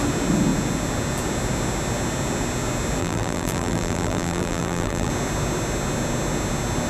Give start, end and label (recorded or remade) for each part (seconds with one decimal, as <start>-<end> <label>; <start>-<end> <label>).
0.0-3.0 recorded; 3.0-5.1 remade; 5.1-6.9 recorded